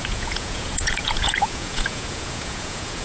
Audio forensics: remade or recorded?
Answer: remade